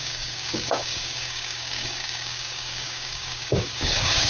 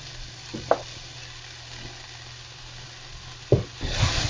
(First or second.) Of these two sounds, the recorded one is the second